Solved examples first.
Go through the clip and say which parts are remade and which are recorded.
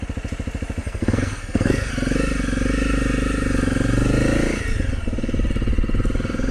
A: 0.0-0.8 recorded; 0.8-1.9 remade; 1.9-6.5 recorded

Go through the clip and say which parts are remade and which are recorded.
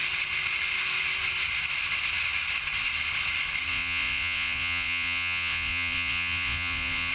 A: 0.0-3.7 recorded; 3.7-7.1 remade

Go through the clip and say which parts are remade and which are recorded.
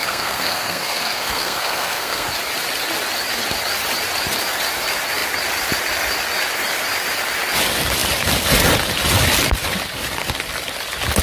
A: 0.0-2.3 remade; 2.3-11.2 recorded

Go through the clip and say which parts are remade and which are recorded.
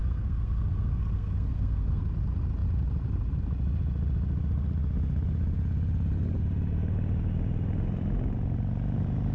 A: 0.0-2.0 remade; 2.0-9.3 recorded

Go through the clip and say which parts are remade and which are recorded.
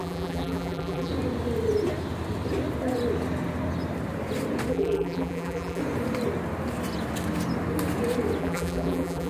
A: 0.0-1.1 remade; 1.1-4.7 recorded; 4.7-5.8 remade; 5.8-8.4 recorded; 8.4-9.3 remade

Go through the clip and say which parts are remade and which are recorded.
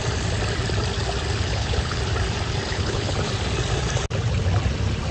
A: 0.0-1.5 recorded; 1.5-2.0 remade; 2.0-2.7 recorded; 2.7-3.3 remade; 3.3-5.1 recorded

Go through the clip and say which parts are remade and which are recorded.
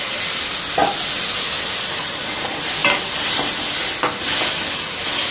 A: 0.0-5.3 recorded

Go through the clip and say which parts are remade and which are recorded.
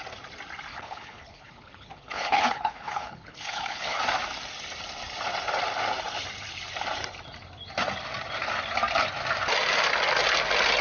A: 0.0-0.7 recorded; 0.7-4.0 remade; 4.0-10.8 recorded